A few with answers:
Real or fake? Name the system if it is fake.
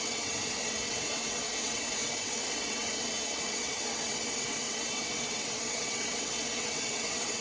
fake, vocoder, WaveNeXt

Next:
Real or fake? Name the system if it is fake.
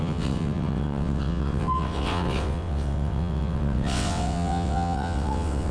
fake, vocoder, WaveNeXt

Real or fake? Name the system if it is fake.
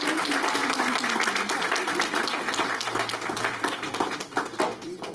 real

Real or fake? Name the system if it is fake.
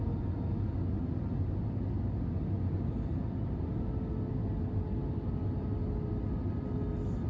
real